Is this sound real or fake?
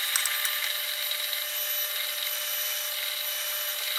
real